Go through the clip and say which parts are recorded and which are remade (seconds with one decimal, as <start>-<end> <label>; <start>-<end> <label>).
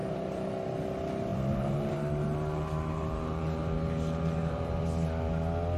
0.0-0.5 remade; 0.5-1.3 recorded; 1.3-4.8 remade; 4.8-5.8 recorded